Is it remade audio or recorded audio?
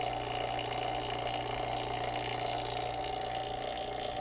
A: recorded